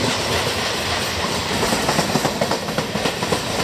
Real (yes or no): no